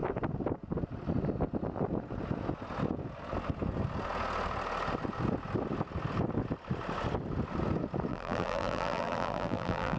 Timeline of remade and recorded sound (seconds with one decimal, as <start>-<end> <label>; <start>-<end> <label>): 0.0-8.1 recorded; 8.1-10.0 remade